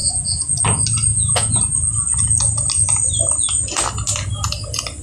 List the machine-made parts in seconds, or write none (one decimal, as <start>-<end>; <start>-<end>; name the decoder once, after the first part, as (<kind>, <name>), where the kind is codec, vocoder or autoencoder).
0.0-0.6 (vocoder, Vocos); 1.1-1.6